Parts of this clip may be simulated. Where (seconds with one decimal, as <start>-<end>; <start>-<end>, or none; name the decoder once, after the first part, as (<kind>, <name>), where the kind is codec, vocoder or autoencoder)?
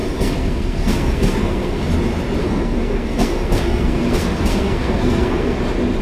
0.0-1.9 (codec, SNAC); 2.4-5.6